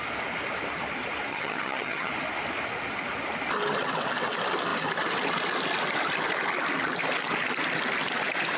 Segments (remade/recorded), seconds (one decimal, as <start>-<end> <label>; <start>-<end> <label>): 0.0-1.3 recorded; 1.3-2.1 remade; 2.1-8.6 recorded